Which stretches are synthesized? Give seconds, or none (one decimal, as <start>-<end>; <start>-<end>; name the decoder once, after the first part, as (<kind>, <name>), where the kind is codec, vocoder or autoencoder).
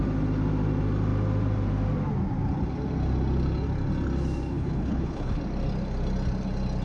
4.5-5.4 (codec, HILCodec)